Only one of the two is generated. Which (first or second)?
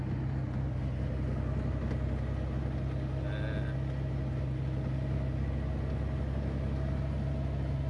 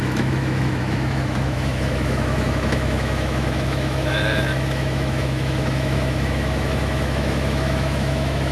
second